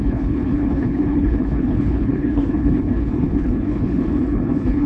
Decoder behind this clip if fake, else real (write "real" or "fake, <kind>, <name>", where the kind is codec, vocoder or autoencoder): fake, codec, HILCodec